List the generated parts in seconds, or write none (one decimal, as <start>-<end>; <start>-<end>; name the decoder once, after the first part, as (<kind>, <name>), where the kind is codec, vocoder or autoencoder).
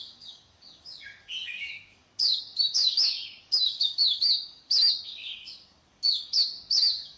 0.0-7.2 (codec, DAC)